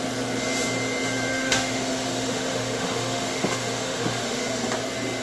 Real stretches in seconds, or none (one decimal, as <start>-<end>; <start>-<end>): 0.0-1.3; 4.4-5.2